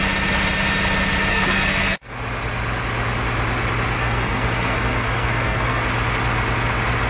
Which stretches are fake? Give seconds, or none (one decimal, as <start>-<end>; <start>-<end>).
1.3-2.1; 4.0-5.8